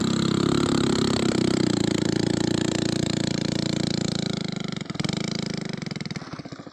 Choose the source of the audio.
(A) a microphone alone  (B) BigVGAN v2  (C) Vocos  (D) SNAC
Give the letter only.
A